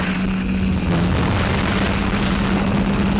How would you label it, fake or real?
real